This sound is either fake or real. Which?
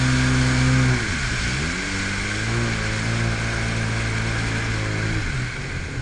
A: real